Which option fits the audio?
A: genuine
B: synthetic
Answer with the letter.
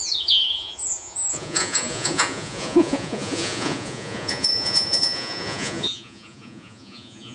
B